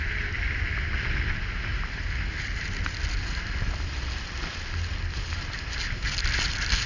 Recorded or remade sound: recorded